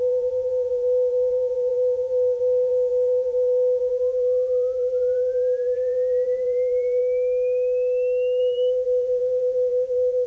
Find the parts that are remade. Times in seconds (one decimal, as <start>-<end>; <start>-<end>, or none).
0.0-7.0; 8.4-10.3